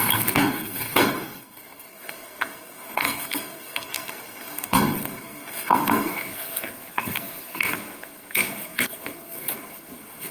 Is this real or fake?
fake